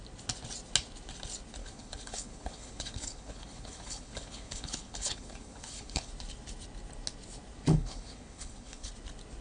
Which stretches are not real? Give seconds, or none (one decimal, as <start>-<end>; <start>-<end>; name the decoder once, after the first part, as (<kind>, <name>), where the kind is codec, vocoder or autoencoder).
1.6-6.1 (codec, HILCodec); 7.7-8.9